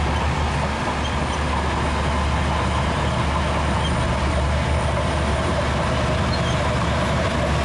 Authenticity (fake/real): real